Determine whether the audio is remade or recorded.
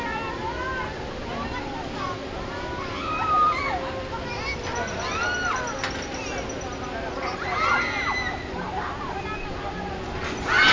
recorded